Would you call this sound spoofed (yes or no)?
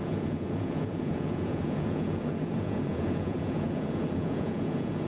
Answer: yes